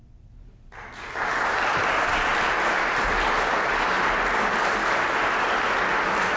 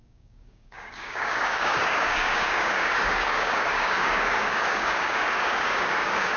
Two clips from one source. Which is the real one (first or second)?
first